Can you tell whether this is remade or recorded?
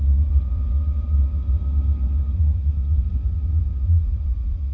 remade